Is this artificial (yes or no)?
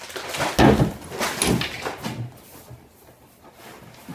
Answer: no